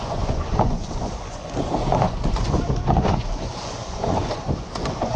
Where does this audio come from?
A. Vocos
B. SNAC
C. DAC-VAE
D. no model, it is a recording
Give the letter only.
A